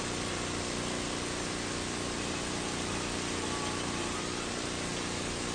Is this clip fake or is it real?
real